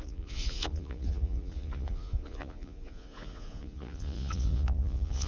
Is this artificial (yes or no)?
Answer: yes